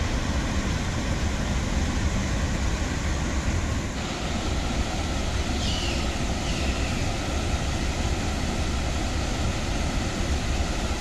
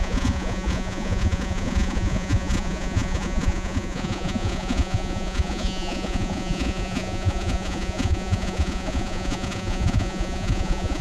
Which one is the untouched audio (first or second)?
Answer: first